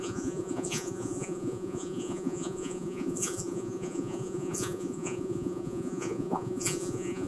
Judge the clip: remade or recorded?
remade